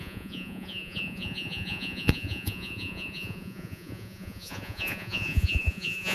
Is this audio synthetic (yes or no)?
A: yes